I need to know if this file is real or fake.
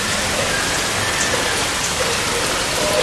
real